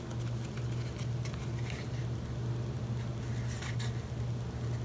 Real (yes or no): yes